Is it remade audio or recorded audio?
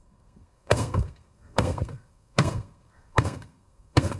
remade